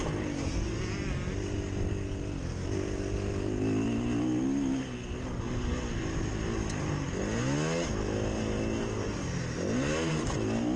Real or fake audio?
real